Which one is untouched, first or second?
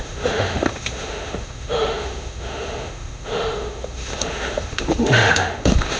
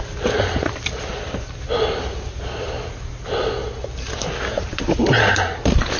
second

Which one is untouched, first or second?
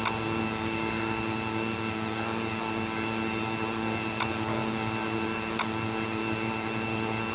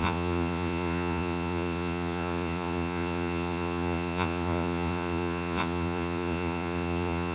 first